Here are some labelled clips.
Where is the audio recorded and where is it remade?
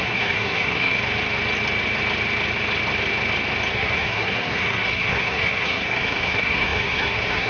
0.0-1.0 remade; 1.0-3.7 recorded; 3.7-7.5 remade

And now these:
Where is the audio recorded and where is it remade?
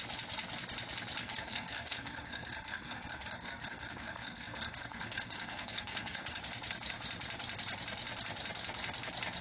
0.0-1.2 recorded; 1.2-6.4 remade; 6.4-9.4 recorded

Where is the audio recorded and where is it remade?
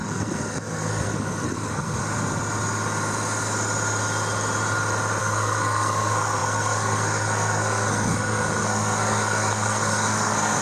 0.0-2.0 remade; 2.0-5.2 recorded; 5.2-10.6 remade